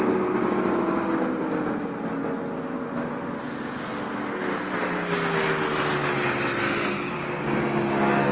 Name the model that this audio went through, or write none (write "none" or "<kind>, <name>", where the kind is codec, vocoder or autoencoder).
none